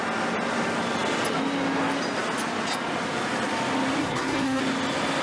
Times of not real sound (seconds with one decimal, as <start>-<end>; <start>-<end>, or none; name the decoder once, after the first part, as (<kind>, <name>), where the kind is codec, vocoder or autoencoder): 4.0-4.6 (codec, SNAC)